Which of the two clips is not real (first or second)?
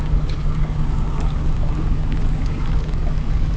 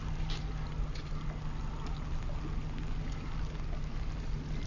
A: first